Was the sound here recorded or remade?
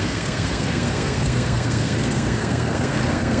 remade